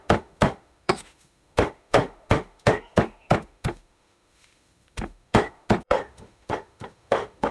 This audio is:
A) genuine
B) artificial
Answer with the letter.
B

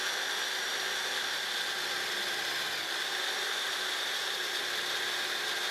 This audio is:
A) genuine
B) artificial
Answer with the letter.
A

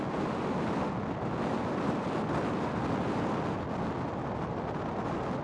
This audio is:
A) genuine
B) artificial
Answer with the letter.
A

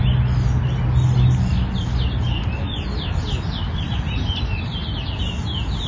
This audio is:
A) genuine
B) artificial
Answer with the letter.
A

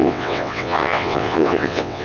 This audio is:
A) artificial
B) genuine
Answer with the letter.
A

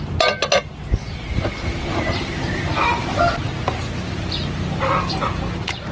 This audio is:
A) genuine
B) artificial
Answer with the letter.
A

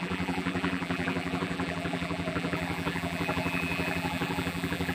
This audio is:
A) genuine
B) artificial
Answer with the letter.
B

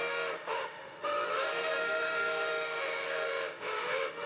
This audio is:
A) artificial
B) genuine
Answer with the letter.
A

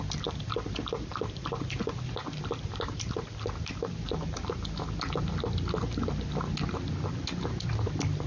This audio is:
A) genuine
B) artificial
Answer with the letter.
A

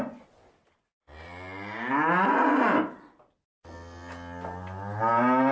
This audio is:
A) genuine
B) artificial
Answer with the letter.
A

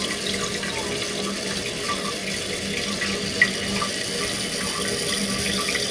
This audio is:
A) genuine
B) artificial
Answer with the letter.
A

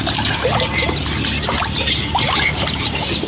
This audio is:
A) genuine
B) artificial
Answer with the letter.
A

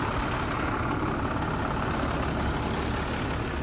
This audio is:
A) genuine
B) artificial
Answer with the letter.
A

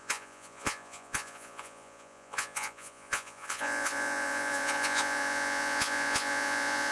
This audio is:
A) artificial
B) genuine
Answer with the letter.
A